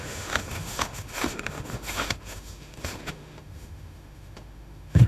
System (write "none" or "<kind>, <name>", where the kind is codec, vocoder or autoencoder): autoencoder, DAC-VAE